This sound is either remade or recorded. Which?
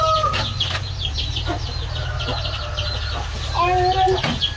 recorded